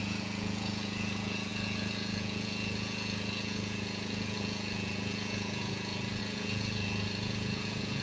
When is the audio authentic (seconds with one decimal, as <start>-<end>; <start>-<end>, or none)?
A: none